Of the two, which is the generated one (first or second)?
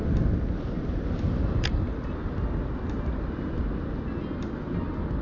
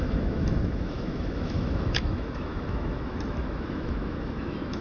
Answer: second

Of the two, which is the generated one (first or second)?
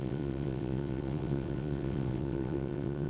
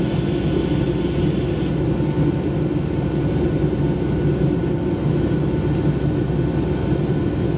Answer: first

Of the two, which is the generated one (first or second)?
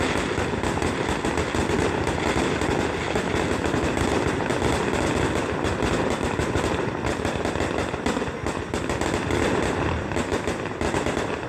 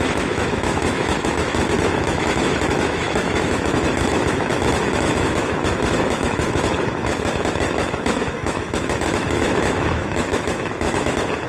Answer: second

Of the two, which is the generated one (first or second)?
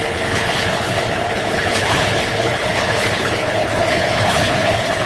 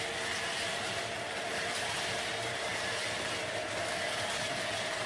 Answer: first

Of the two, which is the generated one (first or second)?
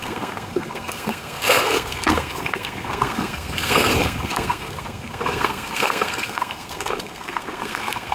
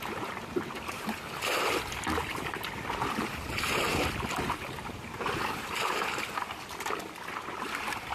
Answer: first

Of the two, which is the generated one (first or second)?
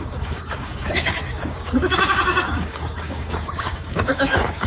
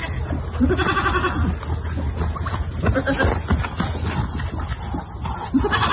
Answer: first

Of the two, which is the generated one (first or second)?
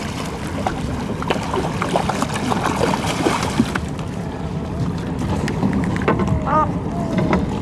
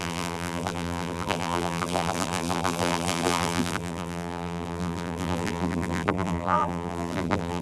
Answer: second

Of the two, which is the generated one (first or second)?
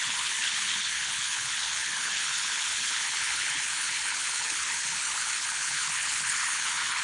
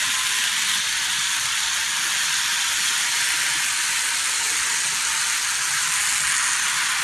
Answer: first